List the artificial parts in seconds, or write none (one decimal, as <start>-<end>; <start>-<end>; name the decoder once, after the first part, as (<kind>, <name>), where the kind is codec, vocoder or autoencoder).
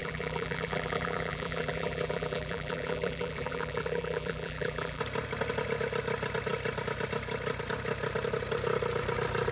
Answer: 0.0-5.0 (vocoder, BigVGAN v2)